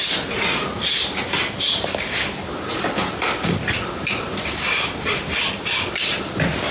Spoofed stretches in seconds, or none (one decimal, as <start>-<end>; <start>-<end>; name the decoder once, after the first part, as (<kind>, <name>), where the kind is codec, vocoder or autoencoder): none